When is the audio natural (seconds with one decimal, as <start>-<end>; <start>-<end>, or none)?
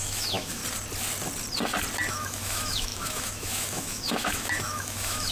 0.6-2.1